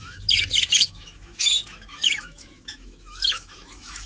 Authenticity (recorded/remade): remade